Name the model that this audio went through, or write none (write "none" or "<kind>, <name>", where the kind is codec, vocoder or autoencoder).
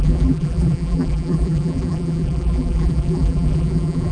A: vocoder, BigVGAN v2